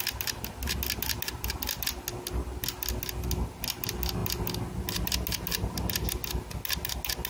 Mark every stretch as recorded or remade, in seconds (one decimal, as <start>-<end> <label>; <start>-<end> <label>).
0.0-7.3 recorded